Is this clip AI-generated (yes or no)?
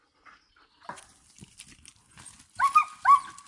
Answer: no